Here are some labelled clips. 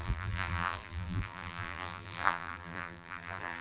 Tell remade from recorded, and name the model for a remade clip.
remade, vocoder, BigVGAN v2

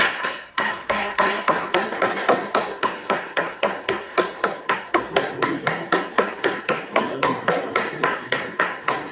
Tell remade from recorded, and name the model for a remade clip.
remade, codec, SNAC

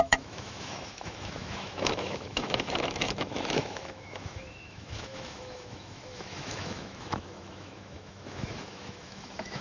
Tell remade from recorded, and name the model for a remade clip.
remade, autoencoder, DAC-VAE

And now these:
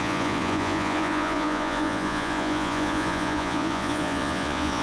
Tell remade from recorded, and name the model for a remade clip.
remade, vocoder, Vocos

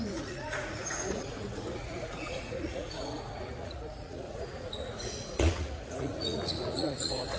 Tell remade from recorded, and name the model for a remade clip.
remade, vocoder, Vocos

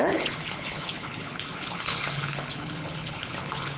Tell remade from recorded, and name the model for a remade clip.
remade, codec, HILCodec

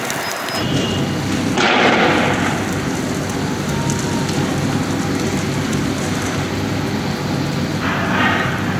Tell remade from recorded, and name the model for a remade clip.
recorded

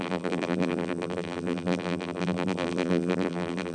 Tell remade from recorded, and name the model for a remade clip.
remade, vocoder, BigVGAN v2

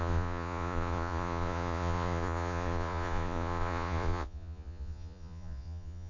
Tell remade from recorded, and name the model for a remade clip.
remade, vocoder, Vocos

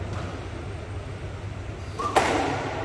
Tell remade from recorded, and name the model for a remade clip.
recorded